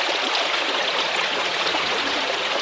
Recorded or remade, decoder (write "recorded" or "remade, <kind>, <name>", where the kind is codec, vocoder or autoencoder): remade, vocoder, Vocos